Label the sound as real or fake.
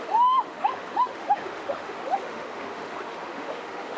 fake